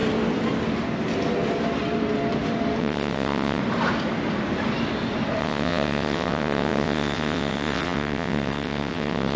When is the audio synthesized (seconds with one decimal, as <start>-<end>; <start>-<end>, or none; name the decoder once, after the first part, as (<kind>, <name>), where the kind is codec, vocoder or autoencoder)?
2.8-3.6 (vocoder, WaveNeXt); 5.4-9.4